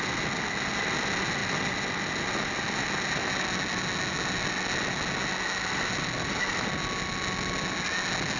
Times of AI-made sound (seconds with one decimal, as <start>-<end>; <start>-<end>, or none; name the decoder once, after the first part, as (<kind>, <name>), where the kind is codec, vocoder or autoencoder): none